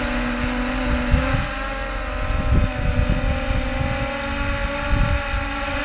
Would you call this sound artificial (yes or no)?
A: no